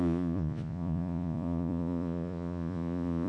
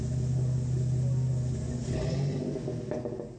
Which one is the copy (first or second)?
first